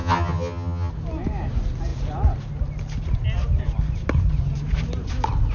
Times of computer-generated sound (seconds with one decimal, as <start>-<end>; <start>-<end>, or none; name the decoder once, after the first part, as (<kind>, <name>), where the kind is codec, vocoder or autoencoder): 0.0-0.9 (vocoder, HiFi-GAN)